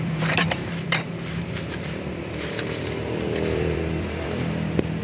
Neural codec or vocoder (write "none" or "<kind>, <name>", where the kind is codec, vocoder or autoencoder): vocoder, BigVGAN v2